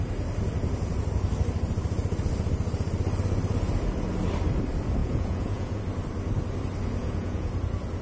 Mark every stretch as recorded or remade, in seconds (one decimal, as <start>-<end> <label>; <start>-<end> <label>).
0.0-5.0 recorded; 5.0-5.8 remade; 5.8-7.0 recorded; 7.0-7.5 remade; 7.5-8.0 recorded